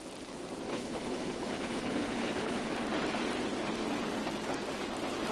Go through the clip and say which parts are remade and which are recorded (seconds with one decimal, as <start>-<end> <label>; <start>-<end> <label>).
0.0-0.7 recorded; 0.7-2.7 remade; 2.7-5.3 recorded